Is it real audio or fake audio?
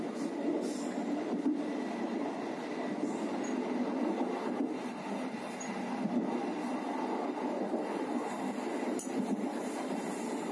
real